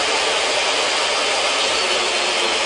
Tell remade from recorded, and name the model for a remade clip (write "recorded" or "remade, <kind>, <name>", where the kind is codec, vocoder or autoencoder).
recorded